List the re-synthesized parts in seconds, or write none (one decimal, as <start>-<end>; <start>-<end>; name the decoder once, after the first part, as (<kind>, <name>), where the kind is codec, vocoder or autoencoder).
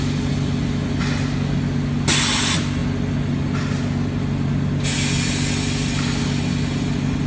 none